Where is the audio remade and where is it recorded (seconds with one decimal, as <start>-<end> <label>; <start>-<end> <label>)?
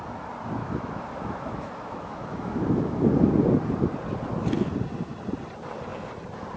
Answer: 0.0-0.6 recorded; 0.6-3.1 remade; 3.1-6.6 recorded